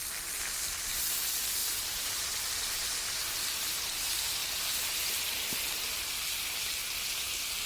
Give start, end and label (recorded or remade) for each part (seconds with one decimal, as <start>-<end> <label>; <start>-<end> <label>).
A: 0.0-1.6 recorded; 1.6-2.8 remade; 2.8-7.7 recorded

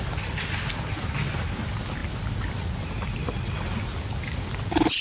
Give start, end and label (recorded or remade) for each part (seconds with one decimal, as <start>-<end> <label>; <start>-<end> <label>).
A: 0.0-5.0 recorded

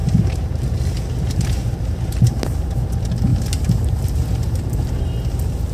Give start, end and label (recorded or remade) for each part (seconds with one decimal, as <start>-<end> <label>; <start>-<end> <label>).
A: 0.0-2.8 remade; 2.8-3.3 recorded; 3.3-4.9 remade; 4.9-5.7 recorded

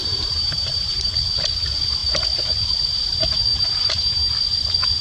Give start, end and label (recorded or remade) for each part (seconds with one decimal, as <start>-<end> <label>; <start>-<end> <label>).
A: 0.0-1.1 remade; 1.1-3.5 recorded; 3.5-4.3 remade; 4.3-5.0 recorded

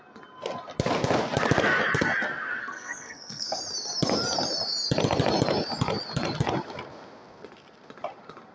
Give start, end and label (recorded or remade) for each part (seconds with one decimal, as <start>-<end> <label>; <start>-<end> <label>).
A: 0.0-2.6 recorded; 2.6-3.6 remade; 3.6-8.5 recorded

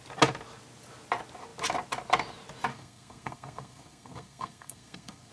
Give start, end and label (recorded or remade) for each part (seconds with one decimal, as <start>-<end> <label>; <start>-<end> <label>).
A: 0.0-2.7 recorded; 2.7-5.3 remade

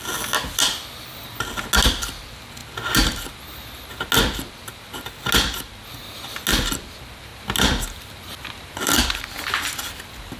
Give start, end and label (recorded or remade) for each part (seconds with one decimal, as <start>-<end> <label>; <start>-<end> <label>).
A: 0.0-10.4 recorded

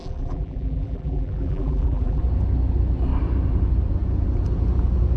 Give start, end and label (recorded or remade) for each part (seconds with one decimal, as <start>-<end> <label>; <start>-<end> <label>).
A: 0.0-2.2 remade; 2.2-5.2 recorded